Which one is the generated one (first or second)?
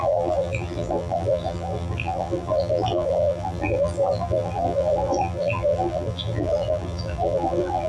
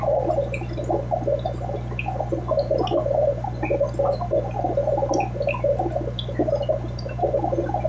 first